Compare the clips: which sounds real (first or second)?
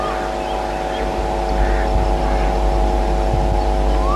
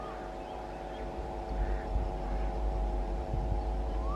first